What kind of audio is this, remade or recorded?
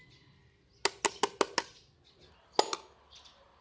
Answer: recorded